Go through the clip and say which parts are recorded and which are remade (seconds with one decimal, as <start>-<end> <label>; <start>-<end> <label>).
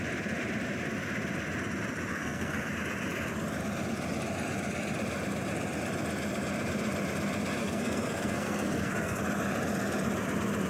0.0-2.1 recorded; 2.1-2.7 remade; 2.7-7.6 recorded; 7.6-9.2 remade; 9.2-10.7 recorded